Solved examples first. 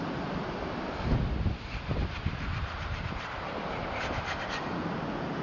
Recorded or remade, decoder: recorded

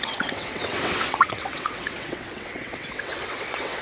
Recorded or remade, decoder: remade, vocoder, WaveNeXt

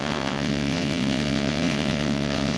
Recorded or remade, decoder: remade, vocoder, WaveNeXt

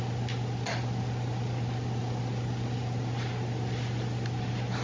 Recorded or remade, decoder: recorded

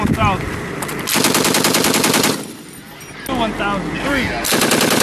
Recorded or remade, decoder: recorded